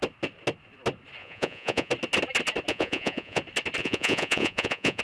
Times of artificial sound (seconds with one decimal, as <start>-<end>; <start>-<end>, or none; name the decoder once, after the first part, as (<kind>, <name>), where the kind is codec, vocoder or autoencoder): 1.2-1.9 (vocoder, Vocos); 2.7-3.4; 3.8-5.0